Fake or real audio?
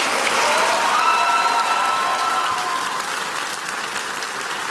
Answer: real